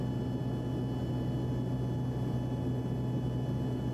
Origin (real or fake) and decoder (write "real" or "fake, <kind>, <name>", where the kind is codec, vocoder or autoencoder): real